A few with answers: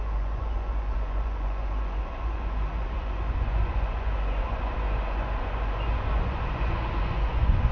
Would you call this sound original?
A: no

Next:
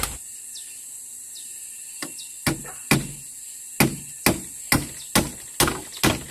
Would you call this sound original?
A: yes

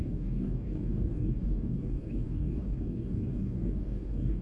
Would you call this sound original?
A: no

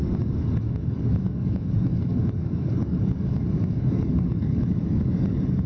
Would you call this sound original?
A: no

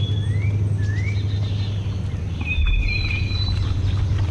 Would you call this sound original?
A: yes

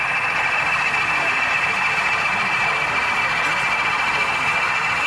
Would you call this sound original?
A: yes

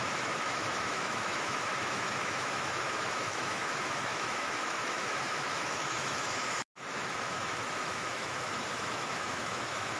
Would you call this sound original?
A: no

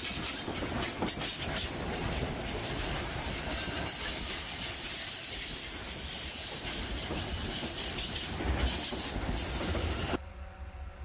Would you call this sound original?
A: yes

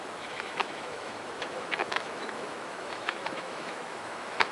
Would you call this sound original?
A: no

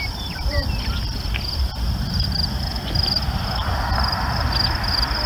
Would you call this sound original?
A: no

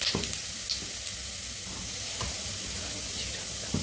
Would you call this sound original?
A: yes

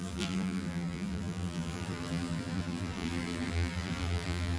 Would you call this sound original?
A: no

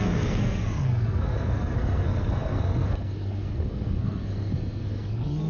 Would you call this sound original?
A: no